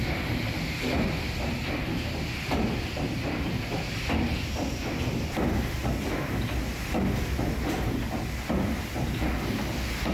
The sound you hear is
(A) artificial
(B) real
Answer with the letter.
B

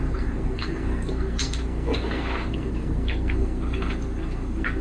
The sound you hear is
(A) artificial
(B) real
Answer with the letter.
A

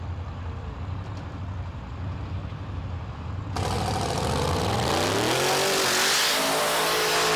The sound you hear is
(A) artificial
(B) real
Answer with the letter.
B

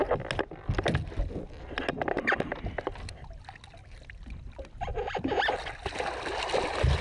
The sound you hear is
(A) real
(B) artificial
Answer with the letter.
A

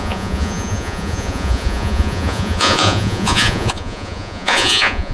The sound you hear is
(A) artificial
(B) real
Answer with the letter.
A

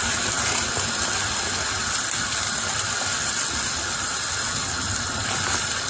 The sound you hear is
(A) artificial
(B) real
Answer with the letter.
B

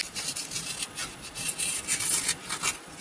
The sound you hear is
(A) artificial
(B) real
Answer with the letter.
B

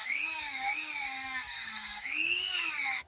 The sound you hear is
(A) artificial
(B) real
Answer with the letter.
A